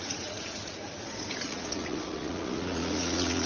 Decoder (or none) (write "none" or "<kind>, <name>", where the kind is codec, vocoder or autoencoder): vocoder, Vocos